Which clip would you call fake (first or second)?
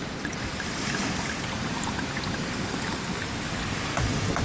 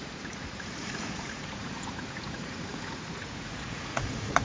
second